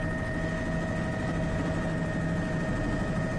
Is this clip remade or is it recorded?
recorded